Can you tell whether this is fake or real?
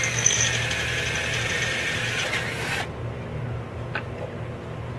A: real